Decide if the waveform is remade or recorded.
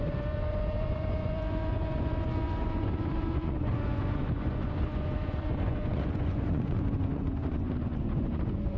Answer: remade